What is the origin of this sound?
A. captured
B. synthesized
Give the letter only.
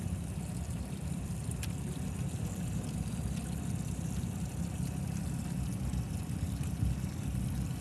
B